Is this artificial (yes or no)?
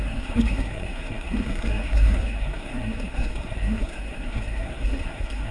yes